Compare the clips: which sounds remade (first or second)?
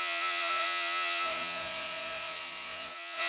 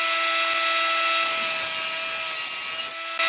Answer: first